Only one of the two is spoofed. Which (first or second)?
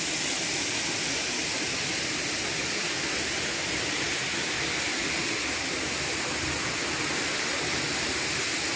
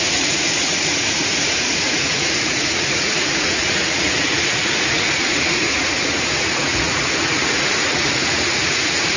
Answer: second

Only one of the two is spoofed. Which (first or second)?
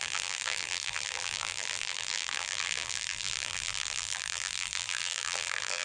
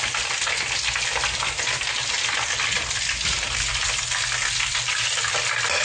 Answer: first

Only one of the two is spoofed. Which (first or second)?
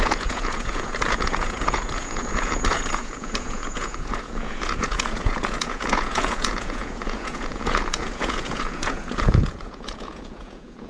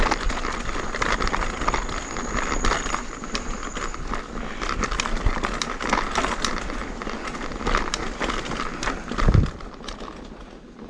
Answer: first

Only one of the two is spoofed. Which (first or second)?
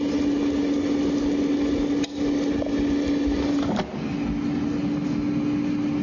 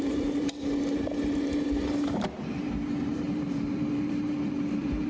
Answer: second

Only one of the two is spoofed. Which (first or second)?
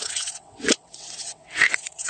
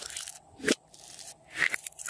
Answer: first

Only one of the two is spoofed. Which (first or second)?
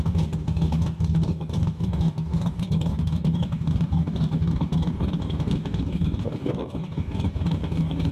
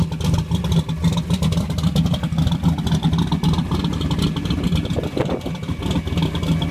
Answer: first